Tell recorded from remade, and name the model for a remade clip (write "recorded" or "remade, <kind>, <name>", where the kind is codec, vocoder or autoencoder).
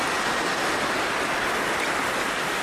recorded